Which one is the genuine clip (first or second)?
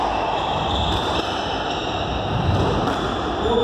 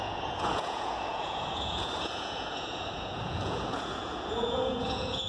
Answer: first